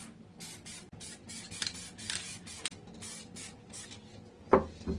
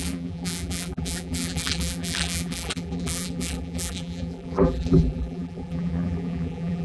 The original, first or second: first